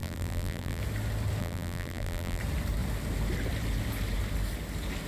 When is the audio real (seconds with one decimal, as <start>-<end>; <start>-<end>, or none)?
0.8-1.4; 2.4-5.1